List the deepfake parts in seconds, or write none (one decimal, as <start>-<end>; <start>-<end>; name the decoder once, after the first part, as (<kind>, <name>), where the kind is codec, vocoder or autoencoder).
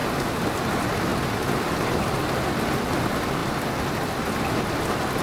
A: none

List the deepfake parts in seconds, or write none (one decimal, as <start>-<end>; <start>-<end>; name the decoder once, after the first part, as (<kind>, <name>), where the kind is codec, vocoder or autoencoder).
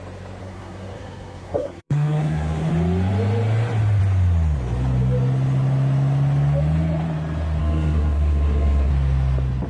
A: 0.4-2.7 (codec, SNAC); 7.6-8.9